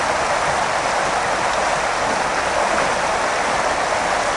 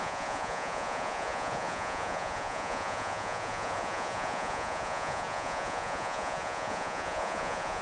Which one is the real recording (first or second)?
first